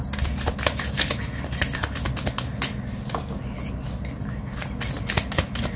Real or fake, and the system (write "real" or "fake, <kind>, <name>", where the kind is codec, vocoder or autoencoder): real